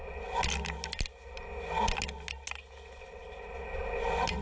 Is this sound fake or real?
real